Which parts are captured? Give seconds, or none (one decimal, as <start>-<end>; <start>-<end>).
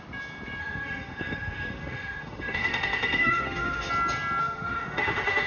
0.0-0.6; 3.9-4.4